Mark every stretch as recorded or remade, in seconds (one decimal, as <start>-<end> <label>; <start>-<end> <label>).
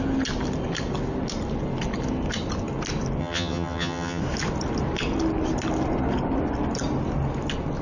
0.0-3.2 recorded; 3.2-4.2 remade; 4.2-7.8 recorded